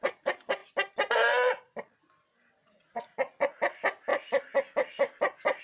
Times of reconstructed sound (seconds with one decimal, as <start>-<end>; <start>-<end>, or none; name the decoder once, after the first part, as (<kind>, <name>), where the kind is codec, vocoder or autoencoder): 2.6-3.6 (vocoder, Vocos)

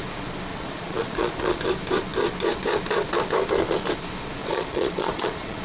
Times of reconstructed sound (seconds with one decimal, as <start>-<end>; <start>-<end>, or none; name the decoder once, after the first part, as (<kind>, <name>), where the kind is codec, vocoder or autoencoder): 0.5-1.6 (vocoder, Vocos); 4.4-5.6

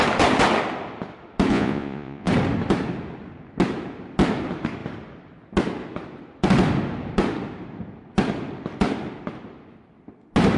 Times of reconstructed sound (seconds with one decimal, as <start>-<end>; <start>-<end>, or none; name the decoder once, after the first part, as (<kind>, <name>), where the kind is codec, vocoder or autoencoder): 1.5-2.3 (vocoder, Vocos)

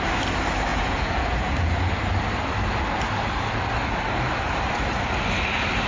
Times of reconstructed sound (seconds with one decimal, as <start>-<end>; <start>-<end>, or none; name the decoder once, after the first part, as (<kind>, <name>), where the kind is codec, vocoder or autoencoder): 0.7-1.9 (vocoder, Vocos)

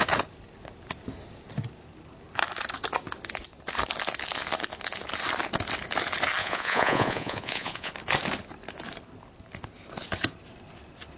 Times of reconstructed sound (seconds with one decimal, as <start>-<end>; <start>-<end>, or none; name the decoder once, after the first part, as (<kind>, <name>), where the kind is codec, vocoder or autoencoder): 6.4-7.9 (vocoder, Vocos)

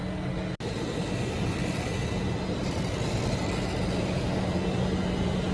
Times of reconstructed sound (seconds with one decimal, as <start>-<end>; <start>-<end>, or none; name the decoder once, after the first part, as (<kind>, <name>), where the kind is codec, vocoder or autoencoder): none

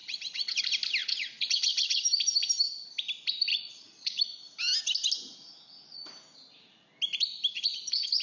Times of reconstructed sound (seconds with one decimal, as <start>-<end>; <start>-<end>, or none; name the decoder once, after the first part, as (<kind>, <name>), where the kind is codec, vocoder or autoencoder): 0.0-0.6 (vocoder, Vocos); 1.0-2.1; 3.5-4.2; 7.5-8.2

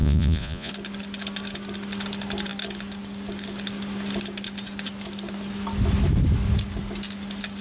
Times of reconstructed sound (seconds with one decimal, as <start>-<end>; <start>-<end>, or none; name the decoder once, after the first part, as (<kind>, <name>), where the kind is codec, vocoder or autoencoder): 0.0-0.7 (vocoder, Vocos)